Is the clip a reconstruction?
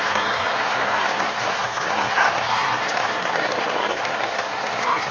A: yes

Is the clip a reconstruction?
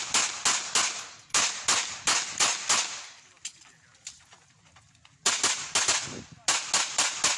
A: no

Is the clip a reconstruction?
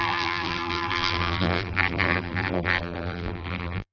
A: yes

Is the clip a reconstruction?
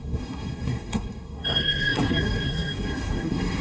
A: yes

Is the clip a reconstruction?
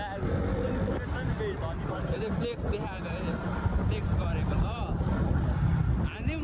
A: no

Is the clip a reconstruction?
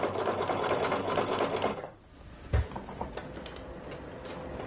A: no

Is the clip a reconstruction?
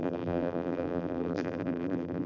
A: yes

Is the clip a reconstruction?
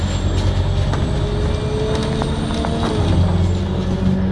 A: no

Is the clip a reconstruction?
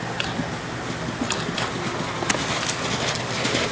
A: no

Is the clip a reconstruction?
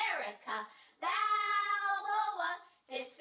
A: yes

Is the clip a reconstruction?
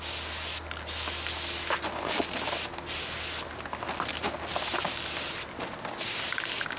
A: no